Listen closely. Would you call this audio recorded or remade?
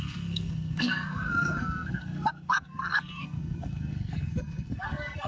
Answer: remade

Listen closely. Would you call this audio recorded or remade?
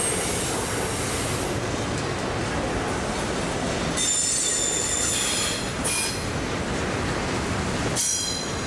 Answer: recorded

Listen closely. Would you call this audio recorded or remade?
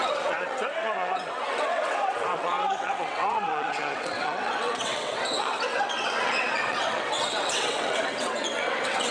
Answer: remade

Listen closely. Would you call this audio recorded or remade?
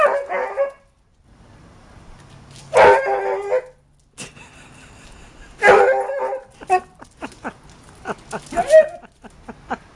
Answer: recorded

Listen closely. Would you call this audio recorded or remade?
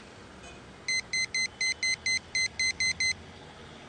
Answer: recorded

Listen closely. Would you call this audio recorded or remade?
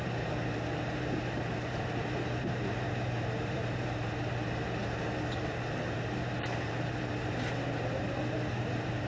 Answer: remade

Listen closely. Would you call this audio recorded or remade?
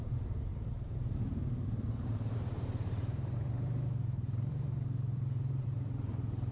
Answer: remade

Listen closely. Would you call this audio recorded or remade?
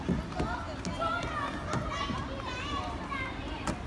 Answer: recorded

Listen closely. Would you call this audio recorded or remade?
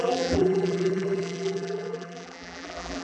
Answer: remade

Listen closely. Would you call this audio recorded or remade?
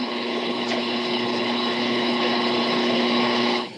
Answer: remade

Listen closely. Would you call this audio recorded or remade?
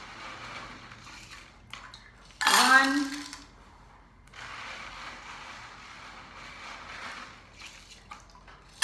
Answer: recorded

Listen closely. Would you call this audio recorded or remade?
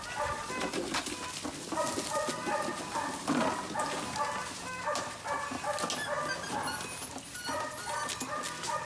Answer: recorded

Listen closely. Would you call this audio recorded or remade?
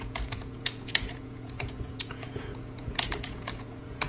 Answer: remade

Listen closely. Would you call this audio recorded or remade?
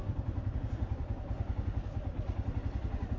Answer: recorded